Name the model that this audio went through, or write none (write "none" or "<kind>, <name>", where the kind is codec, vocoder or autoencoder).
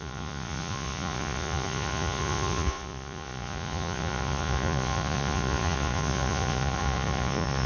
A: vocoder, Vocos